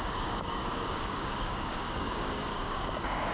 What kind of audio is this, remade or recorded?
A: remade